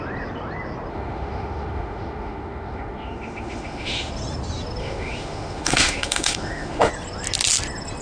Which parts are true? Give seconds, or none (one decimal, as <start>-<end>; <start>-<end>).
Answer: 0.0-0.9; 4.1-4.8; 6.9-8.0